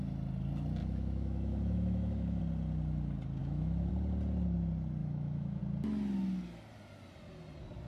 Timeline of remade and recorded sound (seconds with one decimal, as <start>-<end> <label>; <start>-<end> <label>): 0.0-0.8 recorded; 0.8-2.4 remade; 2.4-3.4 recorded; 3.4-3.9 remade; 3.9-5.0 recorded; 5.0-5.6 remade; 5.6-7.9 recorded